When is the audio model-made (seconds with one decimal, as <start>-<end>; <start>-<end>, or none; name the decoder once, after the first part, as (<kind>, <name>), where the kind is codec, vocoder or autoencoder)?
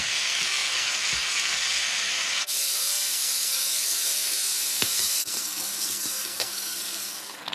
0.0-7.5 (codec, SNAC)